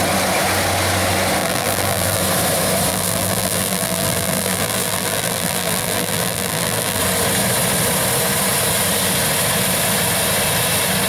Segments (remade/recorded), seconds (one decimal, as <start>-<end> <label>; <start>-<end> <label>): 0.0-1.4 recorded; 1.4-2.2 remade; 2.2-2.9 recorded; 2.9-7.0 remade; 7.0-11.1 recorded